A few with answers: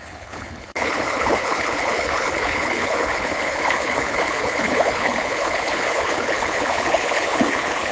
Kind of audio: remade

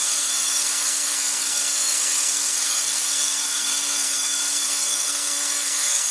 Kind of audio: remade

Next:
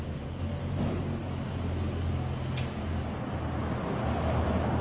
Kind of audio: recorded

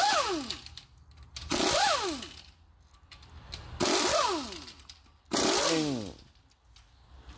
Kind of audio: recorded